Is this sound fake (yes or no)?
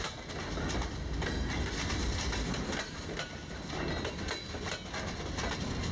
no